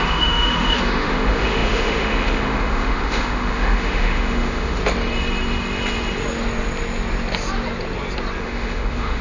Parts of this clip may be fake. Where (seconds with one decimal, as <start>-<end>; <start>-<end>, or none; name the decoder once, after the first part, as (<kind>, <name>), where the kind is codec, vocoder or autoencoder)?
0.0-4.8 (autoencoder, DAC-VAE); 8.4-9.2